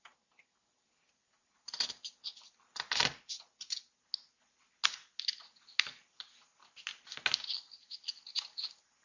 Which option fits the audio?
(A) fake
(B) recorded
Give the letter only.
B